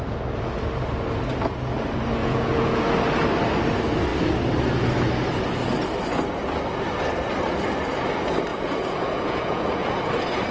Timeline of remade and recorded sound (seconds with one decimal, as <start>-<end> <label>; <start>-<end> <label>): 0.0-2.2 recorded; 2.2-2.8 remade; 2.8-8.5 recorded; 8.5-10.0 remade; 10.0-10.5 recorded